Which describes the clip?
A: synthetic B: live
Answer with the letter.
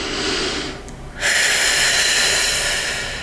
B